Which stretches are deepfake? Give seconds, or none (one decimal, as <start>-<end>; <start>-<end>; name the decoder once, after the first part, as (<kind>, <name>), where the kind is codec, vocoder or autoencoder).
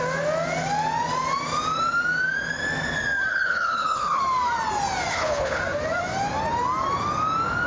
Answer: 3.3-4.2 (codec, HILCodec); 5.1-5.6